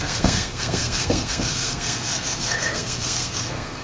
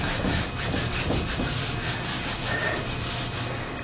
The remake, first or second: first